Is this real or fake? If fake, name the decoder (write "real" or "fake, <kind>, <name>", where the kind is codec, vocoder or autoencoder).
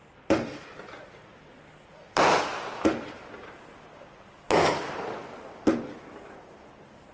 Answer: real